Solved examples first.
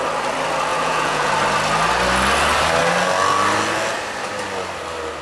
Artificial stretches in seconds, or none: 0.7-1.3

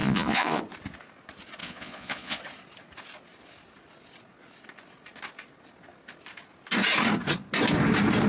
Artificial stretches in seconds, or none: 0.0-0.6; 1.6-2.4

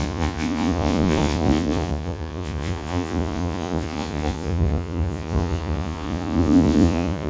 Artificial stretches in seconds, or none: 0.0-7.3

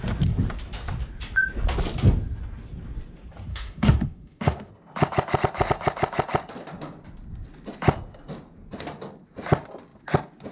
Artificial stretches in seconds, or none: 3.5-4.7

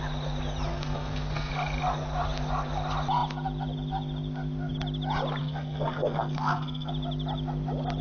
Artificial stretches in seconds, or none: 0.7-1.5; 5.4-6.9

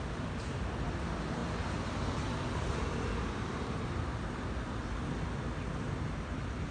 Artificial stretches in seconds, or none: none

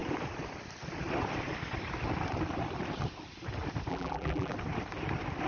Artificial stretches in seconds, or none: 3.9-4.5

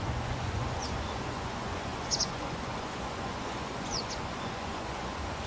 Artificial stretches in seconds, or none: 0.0-5.5